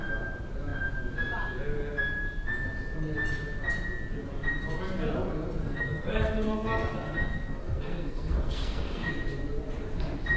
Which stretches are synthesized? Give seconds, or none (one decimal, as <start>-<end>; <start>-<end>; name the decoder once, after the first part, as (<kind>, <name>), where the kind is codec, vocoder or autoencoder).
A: 5.6-9.1 (codec, SNAC)